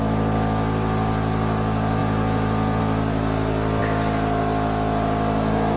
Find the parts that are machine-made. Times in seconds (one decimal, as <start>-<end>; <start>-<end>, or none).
2.0-2.8